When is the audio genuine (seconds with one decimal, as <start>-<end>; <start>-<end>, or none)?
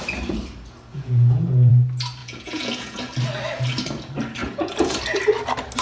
0.0-0.9; 1.7-2.2; 3.0-4.4; 5.0-5.8